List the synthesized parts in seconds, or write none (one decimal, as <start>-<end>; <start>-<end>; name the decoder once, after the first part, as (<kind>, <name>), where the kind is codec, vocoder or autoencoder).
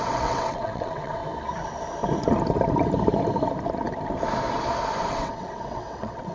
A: 0.0-1.2 (vocoder, WaveNeXt); 5.0-6.3